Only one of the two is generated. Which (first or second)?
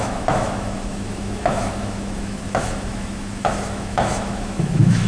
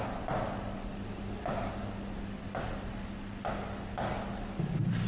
first